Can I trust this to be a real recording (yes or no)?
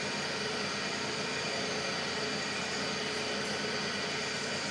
yes